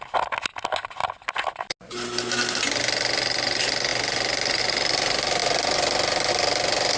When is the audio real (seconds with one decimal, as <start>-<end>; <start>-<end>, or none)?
0.0-7.0